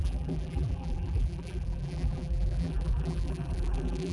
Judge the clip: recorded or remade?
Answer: remade